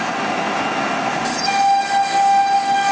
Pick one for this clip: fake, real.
real